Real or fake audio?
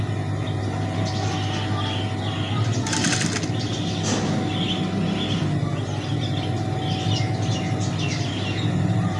real